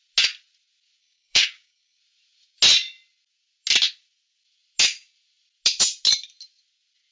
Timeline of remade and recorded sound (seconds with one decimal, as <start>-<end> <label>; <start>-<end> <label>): 0.0-1.0 recorded; 1.0-2.0 remade; 2.0-7.1 recorded